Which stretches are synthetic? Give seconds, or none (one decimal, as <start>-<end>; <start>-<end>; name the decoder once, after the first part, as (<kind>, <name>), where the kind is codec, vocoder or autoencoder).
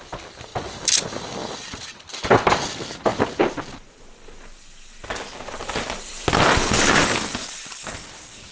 none